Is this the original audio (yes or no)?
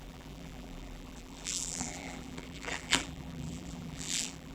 no